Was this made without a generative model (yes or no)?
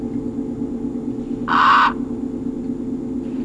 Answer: yes